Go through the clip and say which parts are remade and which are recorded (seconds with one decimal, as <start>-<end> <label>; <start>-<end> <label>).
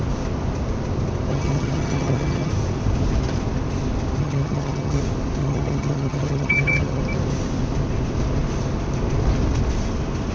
0.0-1.3 recorded; 1.3-2.5 remade; 2.5-4.2 recorded; 4.2-5.0 remade; 5.0-5.4 recorded; 5.4-7.0 remade; 7.0-10.3 recorded